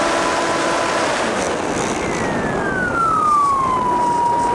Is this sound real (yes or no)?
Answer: yes